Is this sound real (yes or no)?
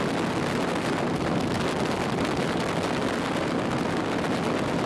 yes